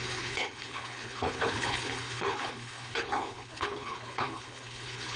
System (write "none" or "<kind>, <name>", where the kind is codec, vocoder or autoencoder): codec, HILCodec